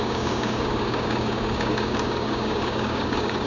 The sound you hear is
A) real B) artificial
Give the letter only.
B